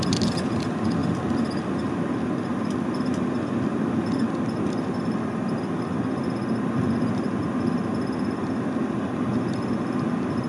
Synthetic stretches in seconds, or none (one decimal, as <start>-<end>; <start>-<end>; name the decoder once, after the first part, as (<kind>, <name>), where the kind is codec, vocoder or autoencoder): none